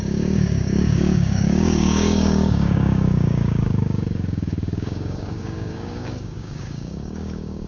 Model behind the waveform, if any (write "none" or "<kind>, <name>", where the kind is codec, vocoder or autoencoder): codec, DAC